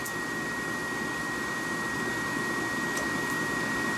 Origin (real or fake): real